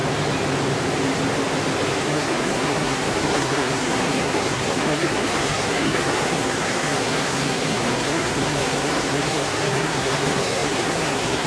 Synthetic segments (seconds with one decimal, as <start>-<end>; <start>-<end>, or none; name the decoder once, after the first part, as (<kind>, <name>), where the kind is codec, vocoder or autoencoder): 2.0-11.5 (codec, SNAC)